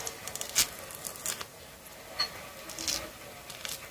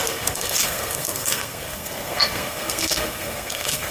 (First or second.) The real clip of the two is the first